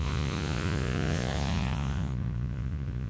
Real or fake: fake